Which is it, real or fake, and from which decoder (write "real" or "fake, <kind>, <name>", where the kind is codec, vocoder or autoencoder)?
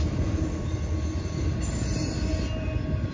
real